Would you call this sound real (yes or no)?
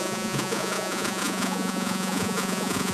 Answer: no